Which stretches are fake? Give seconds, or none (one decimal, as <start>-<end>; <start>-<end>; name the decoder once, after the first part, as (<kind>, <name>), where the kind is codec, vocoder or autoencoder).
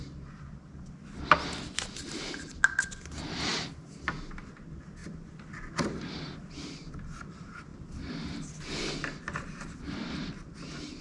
none